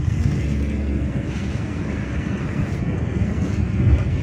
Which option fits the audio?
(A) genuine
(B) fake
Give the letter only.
B